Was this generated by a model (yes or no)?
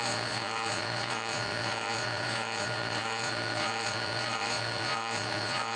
yes